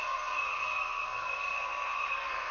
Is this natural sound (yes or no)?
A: no